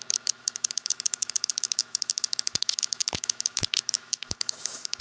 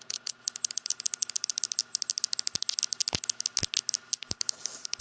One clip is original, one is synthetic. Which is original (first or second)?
second